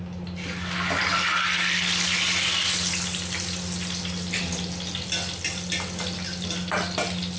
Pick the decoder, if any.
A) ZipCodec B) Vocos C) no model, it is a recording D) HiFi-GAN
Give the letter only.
C